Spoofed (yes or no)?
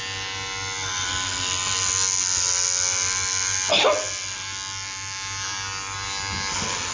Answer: no